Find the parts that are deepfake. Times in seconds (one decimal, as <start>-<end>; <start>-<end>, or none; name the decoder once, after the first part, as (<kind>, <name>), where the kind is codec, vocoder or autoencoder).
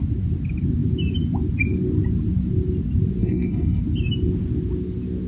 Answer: 3.2-3.8 (codec, SNAC)